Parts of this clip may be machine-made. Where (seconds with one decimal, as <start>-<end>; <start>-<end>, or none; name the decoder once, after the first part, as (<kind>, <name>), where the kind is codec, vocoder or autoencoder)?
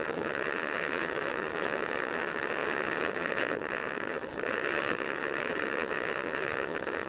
0.0-7.1 (vocoder, WaveNeXt)